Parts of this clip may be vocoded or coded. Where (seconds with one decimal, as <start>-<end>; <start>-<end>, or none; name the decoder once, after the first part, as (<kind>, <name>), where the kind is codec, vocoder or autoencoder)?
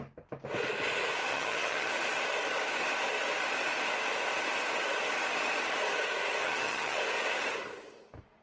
1.3-1.9 (vocoder, HiFi-GAN); 6.4-7.0